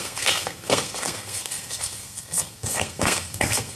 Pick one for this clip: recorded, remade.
remade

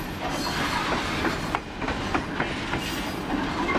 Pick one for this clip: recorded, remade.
recorded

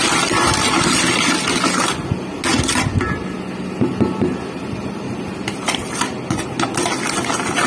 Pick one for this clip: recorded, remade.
recorded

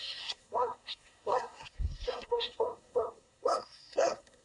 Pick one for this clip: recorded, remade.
remade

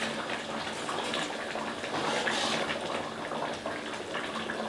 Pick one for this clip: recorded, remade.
recorded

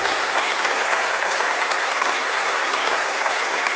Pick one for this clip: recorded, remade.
remade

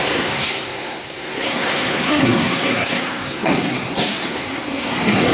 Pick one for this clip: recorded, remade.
remade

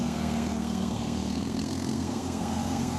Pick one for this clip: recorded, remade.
remade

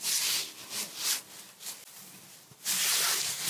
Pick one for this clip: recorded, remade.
recorded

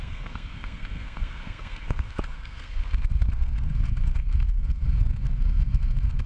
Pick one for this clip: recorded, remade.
remade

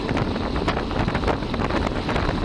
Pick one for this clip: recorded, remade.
recorded